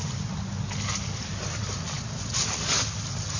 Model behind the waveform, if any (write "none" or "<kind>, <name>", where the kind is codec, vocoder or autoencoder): none